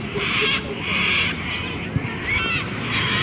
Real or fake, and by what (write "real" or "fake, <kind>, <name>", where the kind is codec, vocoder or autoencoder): real